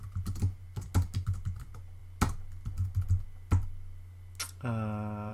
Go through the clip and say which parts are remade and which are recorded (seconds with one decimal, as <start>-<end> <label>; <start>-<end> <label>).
0.0-5.3 recorded